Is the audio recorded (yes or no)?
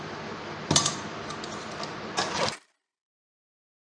yes